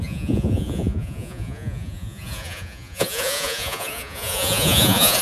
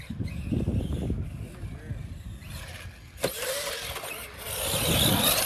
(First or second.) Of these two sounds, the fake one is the first